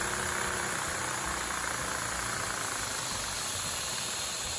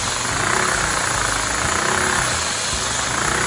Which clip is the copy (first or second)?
first